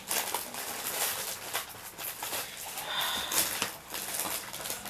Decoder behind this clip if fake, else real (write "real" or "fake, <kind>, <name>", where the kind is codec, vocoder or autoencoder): real